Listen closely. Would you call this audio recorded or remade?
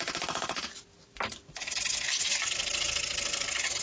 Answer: recorded